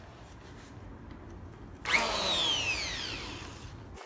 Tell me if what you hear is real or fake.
real